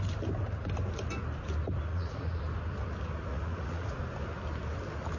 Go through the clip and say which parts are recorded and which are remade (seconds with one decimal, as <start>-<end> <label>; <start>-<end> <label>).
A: 0.0-1.9 recorded; 1.9-2.4 remade; 2.4-3.3 recorded; 3.3-4.0 remade; 4.0-5.2 recorded